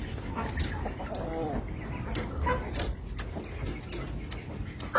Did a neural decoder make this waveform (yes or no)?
no